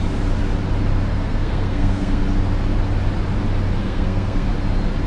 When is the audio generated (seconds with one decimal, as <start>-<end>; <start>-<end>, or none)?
1.1-2.2; 3.8-4.5